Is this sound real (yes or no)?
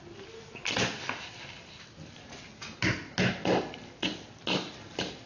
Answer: yes